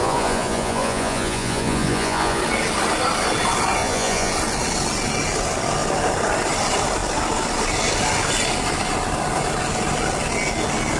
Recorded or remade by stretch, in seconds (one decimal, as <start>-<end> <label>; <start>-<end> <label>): 0.0-2.4 remade; 2.4-3.8 recorded; 3.8-4.3 remade; 4.3-11.0 recorded